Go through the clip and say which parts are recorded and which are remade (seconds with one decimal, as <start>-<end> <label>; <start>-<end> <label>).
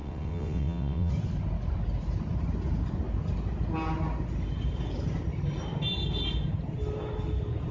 0.0-1.1 remade; 1.1-7.7 recorded